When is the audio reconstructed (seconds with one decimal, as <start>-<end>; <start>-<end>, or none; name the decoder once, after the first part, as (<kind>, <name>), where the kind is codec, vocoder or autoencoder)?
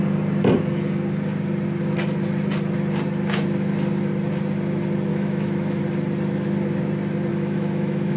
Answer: 5.1-5.8 (autoencoder, DAC-VAE); 7.3-8.2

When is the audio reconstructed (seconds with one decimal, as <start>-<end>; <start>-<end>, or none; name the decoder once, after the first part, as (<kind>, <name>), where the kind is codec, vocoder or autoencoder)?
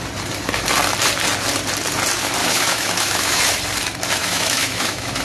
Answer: 2.4-3.4 (autoencoder, DAC-VAE); 4.2-5.2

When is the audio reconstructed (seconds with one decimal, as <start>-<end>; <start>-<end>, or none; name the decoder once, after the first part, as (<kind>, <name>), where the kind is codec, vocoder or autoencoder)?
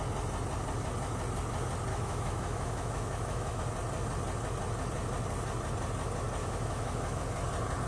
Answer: 1.9-3.6 (autoencoder, DAC-VAE); 6.4-7.2